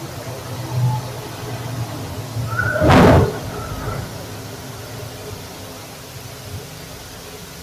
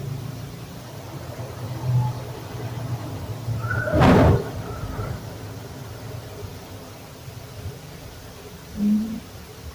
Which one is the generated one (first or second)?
second